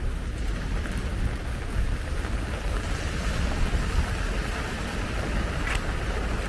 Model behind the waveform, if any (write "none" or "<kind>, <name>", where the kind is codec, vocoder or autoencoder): none